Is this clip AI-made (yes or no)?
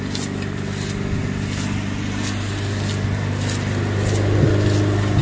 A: no